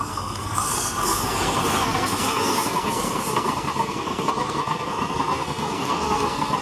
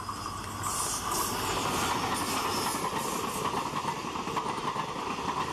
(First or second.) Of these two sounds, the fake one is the first